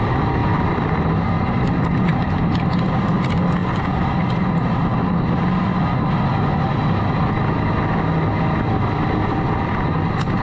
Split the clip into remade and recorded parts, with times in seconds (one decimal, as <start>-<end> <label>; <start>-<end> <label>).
0.0-0.4 recorded; 0.4-1.1 remade; 1.1-10.4 recorded